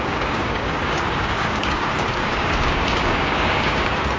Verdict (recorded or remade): remade